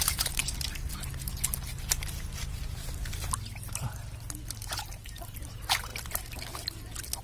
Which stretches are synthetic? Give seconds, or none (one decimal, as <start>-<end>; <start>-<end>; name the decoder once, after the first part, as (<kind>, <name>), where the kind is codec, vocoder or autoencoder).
0.0-0.4 (vocoder, BigVGAN v2); 4.7-5.9